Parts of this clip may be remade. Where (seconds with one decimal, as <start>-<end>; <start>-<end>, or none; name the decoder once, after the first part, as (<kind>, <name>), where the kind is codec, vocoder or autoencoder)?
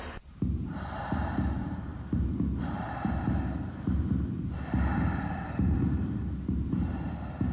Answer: 0.0-7.5 (vocoder, BigVGAN v2)